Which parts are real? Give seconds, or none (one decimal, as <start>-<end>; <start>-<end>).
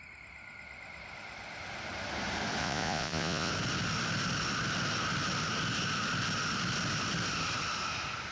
0.0-2.6; 3.5-8.3